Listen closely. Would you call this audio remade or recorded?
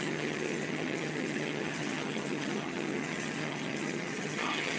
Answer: remade